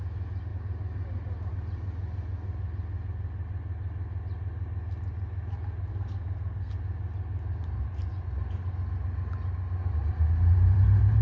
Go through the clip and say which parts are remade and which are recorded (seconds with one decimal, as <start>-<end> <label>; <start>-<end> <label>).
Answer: 0.0-5.9 recorded; 5.9-6.7 remade; 6.7-11.2 recorded